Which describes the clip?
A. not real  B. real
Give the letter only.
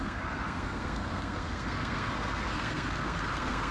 A